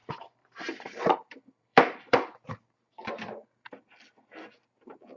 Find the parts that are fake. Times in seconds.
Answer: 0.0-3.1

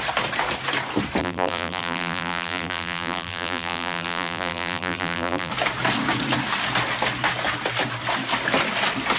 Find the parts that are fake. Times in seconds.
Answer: 1.2-5.5

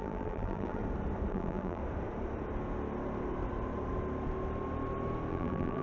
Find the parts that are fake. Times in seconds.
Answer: 0.0-0.8; 1.3-1.8; 5.3-5.8

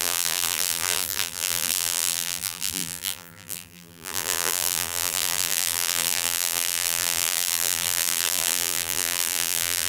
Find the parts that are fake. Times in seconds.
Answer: 0.0-9.9